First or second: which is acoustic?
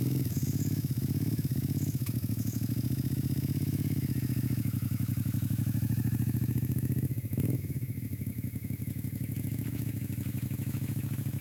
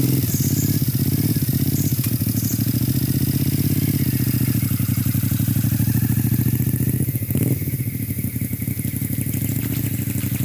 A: second